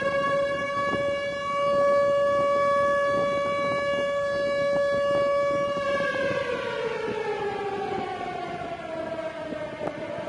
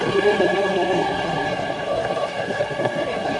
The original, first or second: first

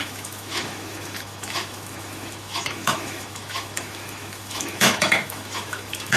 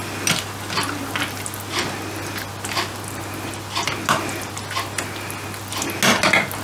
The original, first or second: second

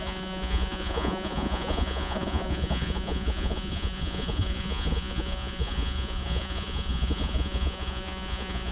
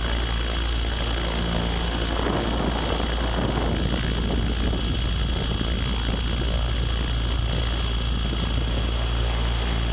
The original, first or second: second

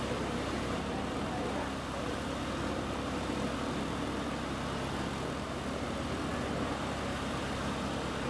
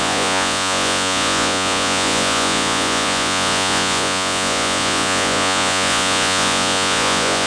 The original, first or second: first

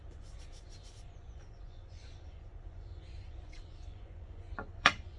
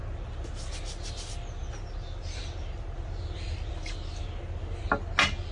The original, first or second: second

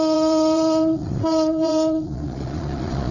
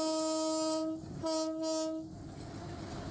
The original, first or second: second